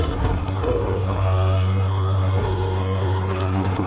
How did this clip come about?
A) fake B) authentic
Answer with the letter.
A